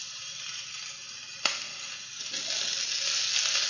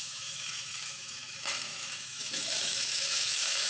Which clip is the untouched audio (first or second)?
first